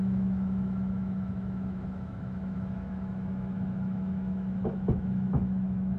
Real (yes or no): no